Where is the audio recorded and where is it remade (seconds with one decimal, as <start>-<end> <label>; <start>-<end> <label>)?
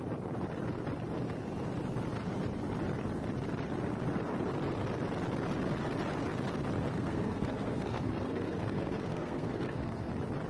0.0-6.9 recorded; 6.9-10.1 remade; 10.1-10.5 recorded